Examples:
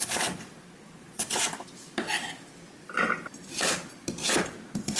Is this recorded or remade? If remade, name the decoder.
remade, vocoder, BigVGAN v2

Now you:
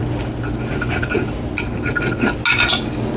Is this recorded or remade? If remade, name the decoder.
recorded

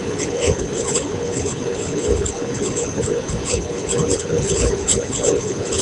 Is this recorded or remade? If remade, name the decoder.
remade, codec, HILCodec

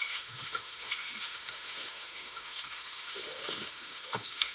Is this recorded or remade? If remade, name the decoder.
remade, autoencoder, DAC-VAE